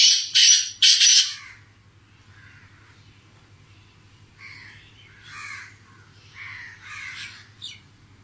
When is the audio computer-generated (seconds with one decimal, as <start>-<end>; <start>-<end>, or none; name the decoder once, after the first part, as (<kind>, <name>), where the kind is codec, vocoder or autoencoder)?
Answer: 0.0-1.1 (vocoder, BigVGAN v2); 2.2-8.2